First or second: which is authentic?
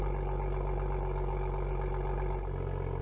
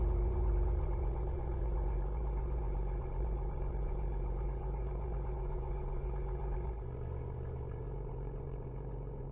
first